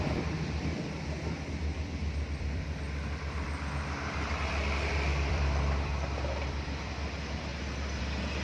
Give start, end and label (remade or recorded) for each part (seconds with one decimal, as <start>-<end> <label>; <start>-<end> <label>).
0.0-5.9 remade; 5.9-6.4 recorded; 6.4-7.5 remade; 7.5-8.0 recorded; 8.0-8.4 remade